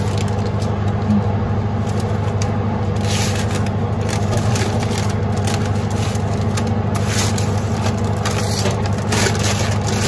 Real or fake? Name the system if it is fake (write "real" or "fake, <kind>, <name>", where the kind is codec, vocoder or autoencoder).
real